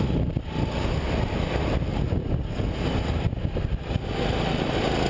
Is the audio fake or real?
real